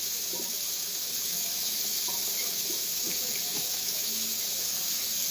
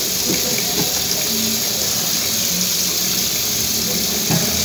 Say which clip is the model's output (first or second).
first